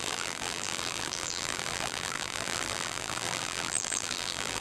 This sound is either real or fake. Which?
fake